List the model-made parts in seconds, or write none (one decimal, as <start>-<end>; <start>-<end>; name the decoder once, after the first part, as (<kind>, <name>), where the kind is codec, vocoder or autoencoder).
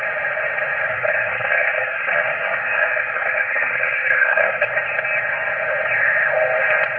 0.9-4.7 (codec, SNAC)